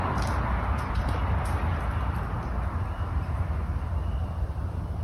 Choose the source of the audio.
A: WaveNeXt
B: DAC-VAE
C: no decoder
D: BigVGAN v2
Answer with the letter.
C